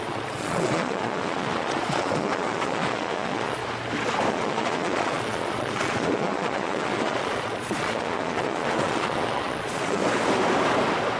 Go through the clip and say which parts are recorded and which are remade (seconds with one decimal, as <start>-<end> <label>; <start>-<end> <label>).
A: 0.0-3.6 remade; 3.6-4.3 recorded; 4.3-10.0 remade; 10.0-11.2 recorded